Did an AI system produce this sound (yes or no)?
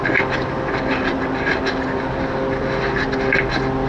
no